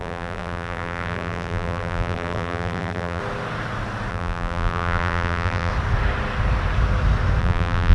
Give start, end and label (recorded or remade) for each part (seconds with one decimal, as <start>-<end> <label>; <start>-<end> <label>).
0.0-3.2 remade; 3.2-4.1 recorded; 4.1-5.7 remade; 5.7-7.4 recorded; 7.4-7.9 remade